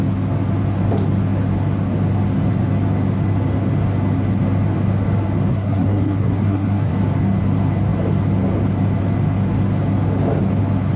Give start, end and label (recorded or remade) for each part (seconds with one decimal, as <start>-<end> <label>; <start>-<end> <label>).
0.0-5.5 recorded; 5.5-6.9 remade; 6.9-11.0 recorded